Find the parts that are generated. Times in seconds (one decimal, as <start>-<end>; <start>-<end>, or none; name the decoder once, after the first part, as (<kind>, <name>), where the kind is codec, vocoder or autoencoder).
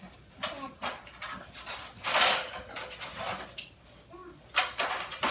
none